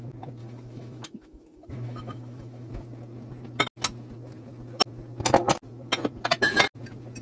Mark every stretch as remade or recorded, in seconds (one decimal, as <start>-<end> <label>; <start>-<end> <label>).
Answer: 0.0-0.4 recorded; 0.4-2.7 remade; 2.7-7.2 recorded